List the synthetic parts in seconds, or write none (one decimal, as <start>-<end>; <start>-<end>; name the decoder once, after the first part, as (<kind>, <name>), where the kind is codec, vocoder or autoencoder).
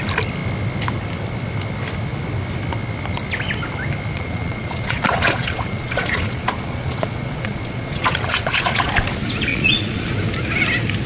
4.1-8.9 (vocoder, Vocos); 9.5-10.1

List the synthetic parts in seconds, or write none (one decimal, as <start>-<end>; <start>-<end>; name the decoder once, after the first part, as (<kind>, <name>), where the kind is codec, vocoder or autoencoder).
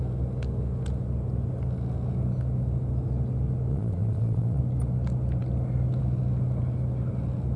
3.7-4.6 (vocoder, Vocos)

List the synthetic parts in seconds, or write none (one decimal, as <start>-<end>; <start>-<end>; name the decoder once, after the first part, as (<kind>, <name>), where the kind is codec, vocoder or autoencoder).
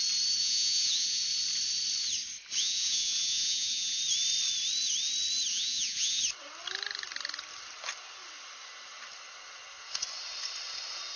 0.4-1.2 (vocoder, Vocos); 2.6-4.0; 5.5-6.2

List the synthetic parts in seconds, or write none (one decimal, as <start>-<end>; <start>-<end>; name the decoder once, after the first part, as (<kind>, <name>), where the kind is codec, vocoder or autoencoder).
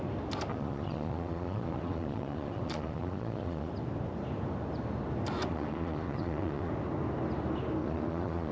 0.5-3.7 (vocoder, Vocos); 5.5-6.7; 7.8-8.5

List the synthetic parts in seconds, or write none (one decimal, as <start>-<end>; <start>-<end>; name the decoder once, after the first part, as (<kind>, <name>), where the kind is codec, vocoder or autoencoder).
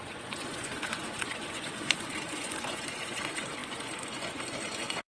0.0-5.1 (vocoder, Vocos)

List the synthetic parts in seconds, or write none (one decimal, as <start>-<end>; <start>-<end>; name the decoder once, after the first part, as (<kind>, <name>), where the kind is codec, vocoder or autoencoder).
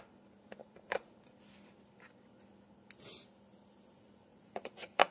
0.6-1.1 (vocoder, Vocos); 4.3-5.1